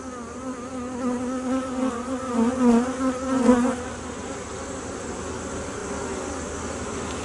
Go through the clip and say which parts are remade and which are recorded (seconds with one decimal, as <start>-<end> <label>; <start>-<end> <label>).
0.0-7.2 recorded